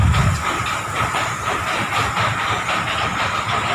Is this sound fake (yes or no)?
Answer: no